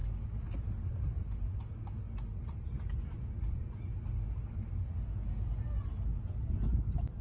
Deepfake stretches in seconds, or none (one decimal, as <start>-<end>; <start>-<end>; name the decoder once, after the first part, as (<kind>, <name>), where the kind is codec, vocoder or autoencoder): none

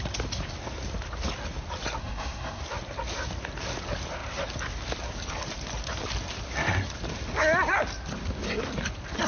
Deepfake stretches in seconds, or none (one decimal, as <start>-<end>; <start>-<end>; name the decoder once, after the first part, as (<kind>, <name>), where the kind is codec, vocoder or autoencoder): 2.0-2.6 (codec, SNAC)

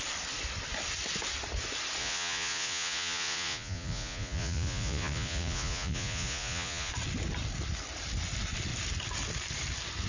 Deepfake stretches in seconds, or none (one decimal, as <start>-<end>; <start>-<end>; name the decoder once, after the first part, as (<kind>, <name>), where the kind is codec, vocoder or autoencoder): 2.0-6.9 (vocoder, Vocos)